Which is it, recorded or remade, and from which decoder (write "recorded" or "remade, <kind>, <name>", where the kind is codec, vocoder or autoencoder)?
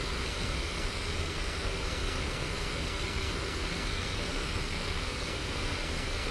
remade, codec, SNAC